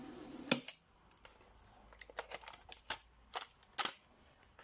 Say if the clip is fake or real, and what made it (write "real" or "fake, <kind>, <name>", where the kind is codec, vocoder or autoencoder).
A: real